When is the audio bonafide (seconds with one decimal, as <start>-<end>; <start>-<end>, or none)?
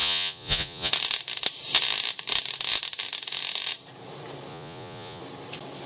0.9-4.5; 5.2-5.9